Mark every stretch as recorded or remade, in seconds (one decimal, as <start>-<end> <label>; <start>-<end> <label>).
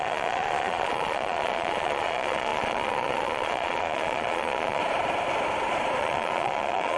0.0-4.8 remade; 4.8-6.0 recorded; 6.0-7.0 remade